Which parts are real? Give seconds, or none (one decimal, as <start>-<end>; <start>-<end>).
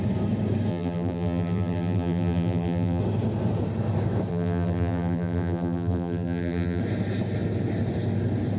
0.0-0.7; 3.0-4.3; 6.8-8.6